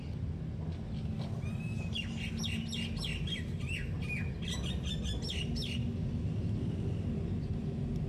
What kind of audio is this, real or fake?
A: real